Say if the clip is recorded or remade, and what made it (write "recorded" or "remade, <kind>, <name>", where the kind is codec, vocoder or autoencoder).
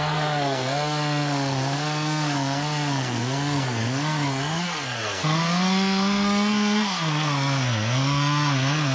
remade, codec, SNAC